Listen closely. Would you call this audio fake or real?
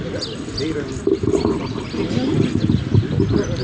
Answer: real